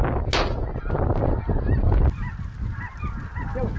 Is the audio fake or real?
real